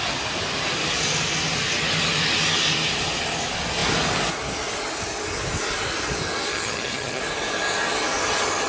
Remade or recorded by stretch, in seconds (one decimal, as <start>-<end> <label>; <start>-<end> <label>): 0.0-6.5 recorded; 6.5-7.2 remade; 7.2-8.7 recorded